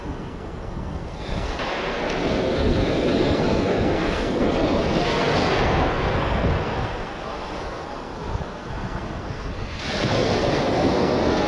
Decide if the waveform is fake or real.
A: fake